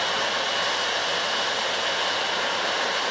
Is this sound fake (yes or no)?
no